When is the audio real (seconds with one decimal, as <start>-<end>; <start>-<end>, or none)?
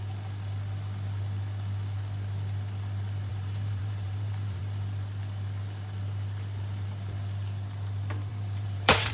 0.0-3.3; 4.6-8.3